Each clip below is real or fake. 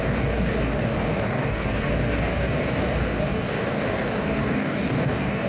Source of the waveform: fake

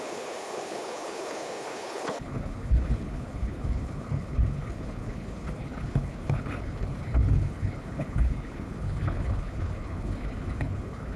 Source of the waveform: fake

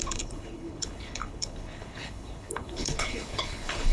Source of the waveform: fake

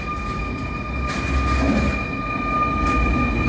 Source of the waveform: real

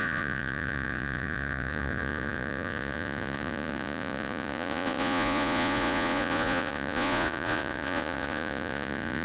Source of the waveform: fake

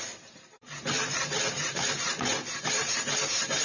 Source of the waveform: fake